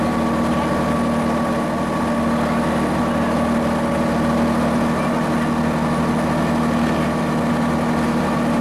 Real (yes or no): yes